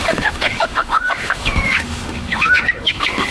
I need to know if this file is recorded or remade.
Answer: remade